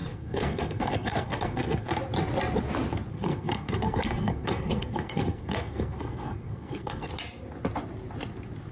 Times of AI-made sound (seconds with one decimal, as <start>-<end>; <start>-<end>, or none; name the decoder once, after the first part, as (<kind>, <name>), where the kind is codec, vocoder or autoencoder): 0.0-1.9 (codec, SNAC); 3.1-7.1